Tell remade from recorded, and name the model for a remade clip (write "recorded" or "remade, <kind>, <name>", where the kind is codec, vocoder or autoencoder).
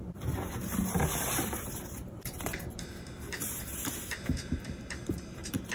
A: remade, vocoder, BigVGAN v2